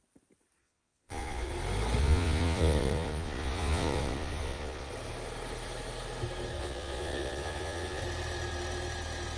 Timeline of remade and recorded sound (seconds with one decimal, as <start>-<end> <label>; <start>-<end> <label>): 0.0-0.6 recorded; 0.6-1.5 remade; 1.5-2.0 recorded; 2.0-4.9 remade; 4.9-6.6 recorded; 6.6-8.0 remade; 8.0-9.4 recorded